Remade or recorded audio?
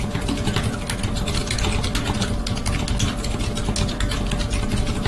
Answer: recorded